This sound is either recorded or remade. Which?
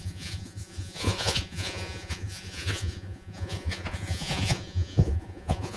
remade